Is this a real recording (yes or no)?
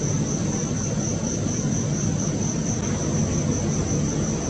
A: yes